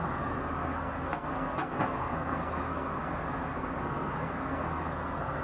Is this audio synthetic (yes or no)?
yes